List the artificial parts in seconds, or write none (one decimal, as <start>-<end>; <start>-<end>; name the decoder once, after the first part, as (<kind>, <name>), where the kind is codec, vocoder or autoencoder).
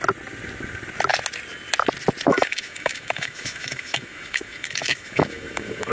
2.3-5.9 (autoencoder, DAC-VAE)